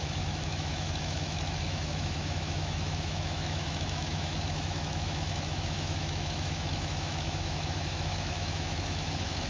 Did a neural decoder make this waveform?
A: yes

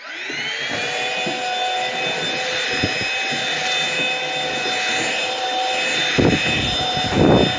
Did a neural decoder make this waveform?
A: no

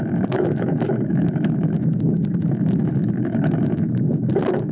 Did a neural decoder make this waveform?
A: yes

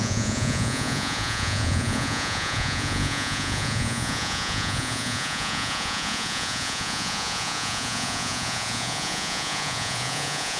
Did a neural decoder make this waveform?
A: yes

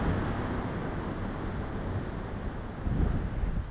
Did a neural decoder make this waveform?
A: no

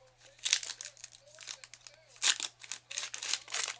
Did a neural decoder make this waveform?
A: no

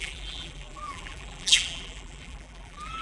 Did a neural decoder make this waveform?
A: yes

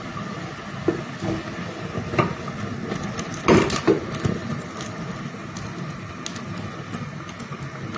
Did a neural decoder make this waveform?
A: no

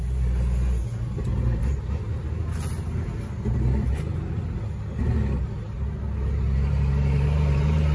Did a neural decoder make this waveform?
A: no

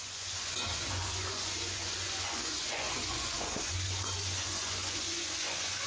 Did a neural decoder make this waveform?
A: yes